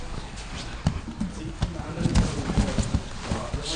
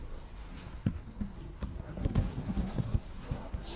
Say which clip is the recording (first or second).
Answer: first